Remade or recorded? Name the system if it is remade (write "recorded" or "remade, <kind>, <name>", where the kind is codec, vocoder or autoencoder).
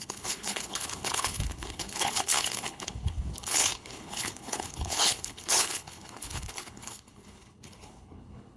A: remade, codec, HILCodec